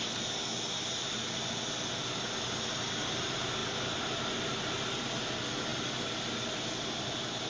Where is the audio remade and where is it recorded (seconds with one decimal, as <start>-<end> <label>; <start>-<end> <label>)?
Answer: 0.0-7.5 recorded